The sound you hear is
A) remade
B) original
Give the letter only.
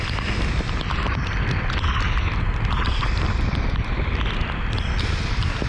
B